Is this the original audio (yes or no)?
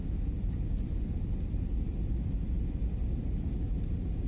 yes